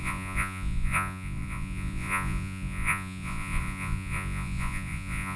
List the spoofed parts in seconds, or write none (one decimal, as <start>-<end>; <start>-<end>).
0.0-5.4